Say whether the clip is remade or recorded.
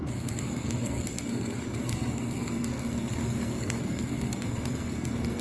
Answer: remade